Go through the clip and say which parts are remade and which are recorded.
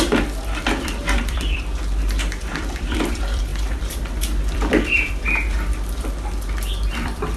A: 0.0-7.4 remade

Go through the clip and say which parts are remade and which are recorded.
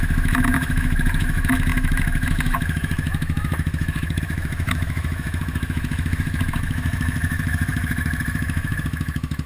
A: 0.0-9.5 remade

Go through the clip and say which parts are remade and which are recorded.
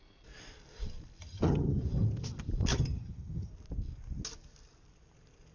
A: 0.0-1.2 recorded; 1.2-1.8 remade; 1.8-2.7 recorded; 2.7-3.5 remade; 3.5-5.5 recorded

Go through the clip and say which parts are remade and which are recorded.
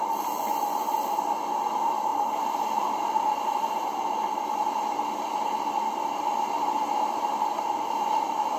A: 0.0-8.6 recorded